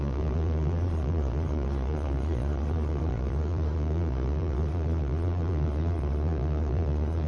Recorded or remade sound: remade